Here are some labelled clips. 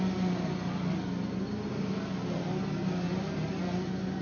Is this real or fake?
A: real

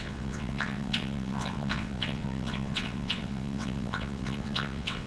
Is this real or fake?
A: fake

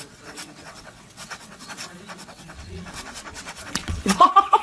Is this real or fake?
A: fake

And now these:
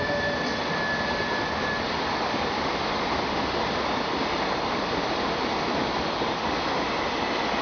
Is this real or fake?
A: real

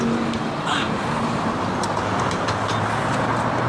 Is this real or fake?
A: real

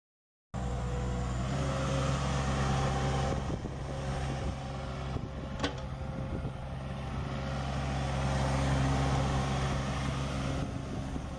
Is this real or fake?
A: real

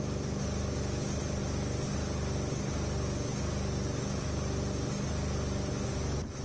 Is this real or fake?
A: real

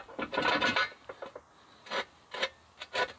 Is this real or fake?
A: real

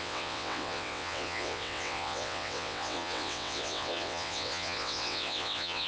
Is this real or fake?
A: fake